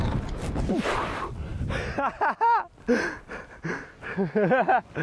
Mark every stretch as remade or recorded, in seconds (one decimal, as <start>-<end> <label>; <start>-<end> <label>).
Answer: 0.0-5.0 recorded